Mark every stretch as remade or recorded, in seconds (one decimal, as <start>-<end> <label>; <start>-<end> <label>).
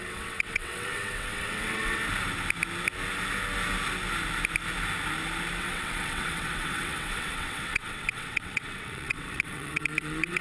0.0-2.0 remade; 2.0-5.6 recorded; 5.6-10.4 remade